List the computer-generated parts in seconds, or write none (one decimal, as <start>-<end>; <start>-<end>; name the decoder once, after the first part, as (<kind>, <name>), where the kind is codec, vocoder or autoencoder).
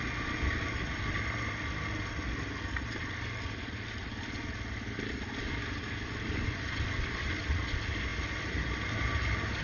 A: none